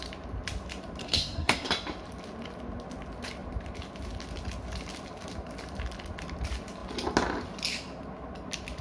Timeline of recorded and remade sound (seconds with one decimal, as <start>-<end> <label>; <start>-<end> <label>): 0.0-1.0 recorded; 1.0-1.7 remade; 1.7-8.8 recorded

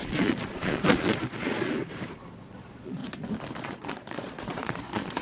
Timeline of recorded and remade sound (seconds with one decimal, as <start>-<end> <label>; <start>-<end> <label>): 0.0-1.8 remade; 1.8-2.5 recorded; 2.5-3.0 remade; 3.0-3.6 recorded; 3.6-5.2 remade

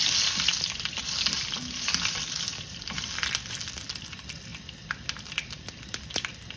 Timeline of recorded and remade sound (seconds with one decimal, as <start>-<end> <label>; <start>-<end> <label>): 0.0-6.6 recorded